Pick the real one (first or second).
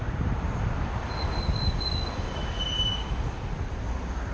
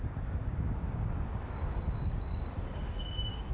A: first